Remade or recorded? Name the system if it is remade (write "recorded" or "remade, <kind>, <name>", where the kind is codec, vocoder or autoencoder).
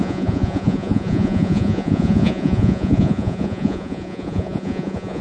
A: remade, vocoder, Vocos